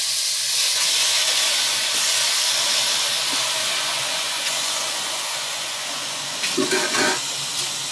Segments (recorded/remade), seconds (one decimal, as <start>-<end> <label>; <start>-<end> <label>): 0.0-0.7 recorded; 0.7-1.9 remade; 1.9-3.6 recorded; 3.6-7.2 remade; 7.2-7.9 recorded

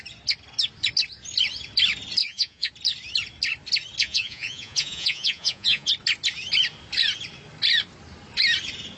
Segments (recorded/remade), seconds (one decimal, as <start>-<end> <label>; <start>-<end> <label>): 0.0-2.2 recorded; 2.2-2.7 remade; 2.7-4.0 recorded; 4.0-5.9 remade; 5.9-9.0 recorded

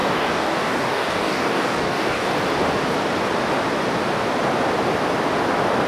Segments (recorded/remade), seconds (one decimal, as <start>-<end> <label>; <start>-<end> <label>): 0.0-2.3 remade; 2.3-5.9 recorded

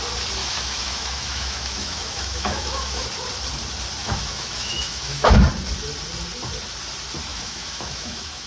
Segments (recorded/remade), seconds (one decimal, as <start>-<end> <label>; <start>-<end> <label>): 0.0-0.4 recorded; 0.4-3.0 remade; 3.0-4.0 recorded; 4.0-5.3 remade; 5.3-7.3 recorded; 7.3-8.5 remade

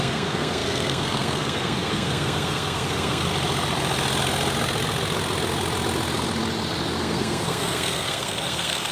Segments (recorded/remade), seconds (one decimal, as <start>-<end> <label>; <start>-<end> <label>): 0.0-3.3 remade; 3.3-7.0 recorded; 7.0-8.9 remade

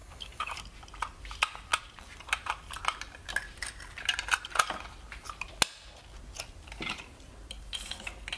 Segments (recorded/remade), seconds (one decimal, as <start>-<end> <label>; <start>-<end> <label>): 0.0-0.6 remade; 0.6-8.4 recorded